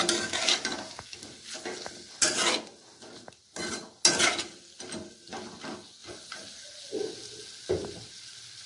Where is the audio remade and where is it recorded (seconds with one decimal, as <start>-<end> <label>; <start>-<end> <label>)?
0.0-8.7 recorded